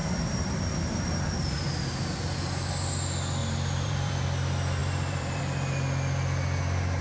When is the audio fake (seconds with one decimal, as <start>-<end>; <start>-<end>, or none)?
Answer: 0.0-0.6; 3.4-4.2; 4.8-5.4